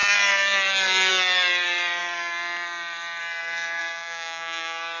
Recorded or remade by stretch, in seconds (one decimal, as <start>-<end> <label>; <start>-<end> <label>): 0.0-3.8 recorded; 3.8-5.0 remade